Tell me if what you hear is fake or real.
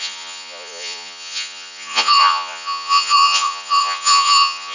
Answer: fake